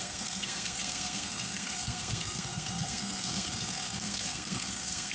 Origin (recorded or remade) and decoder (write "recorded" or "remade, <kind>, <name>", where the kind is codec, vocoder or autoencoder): remade, codec, SNAC